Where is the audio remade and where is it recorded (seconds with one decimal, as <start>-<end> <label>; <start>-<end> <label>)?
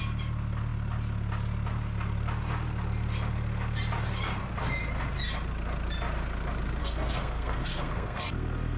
0.0-6.8 recorded; 6.8-8.8 remade